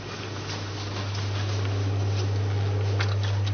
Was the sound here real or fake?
real